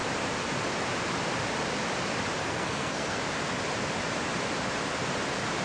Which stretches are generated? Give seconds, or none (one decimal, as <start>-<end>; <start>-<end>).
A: 2.4-3.2